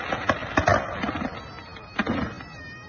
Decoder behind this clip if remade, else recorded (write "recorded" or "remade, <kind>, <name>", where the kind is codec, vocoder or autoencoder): recorded